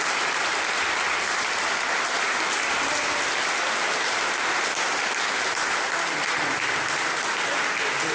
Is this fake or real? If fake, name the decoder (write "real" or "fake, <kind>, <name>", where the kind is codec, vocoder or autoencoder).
real